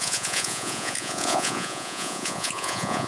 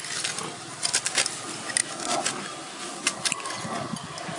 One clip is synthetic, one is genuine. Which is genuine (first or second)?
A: second